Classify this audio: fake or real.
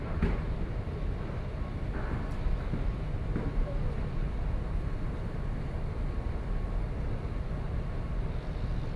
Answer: real